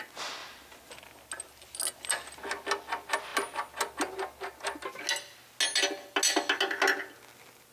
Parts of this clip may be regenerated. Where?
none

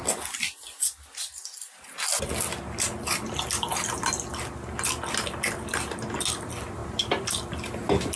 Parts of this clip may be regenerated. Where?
none

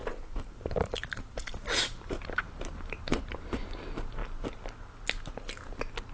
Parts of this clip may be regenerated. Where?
0.0-3.7 (vocoder, BigVGAN v2)